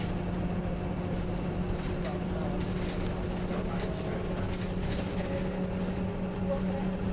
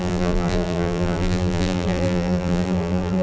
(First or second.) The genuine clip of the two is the first